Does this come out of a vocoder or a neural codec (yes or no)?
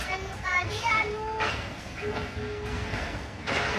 yes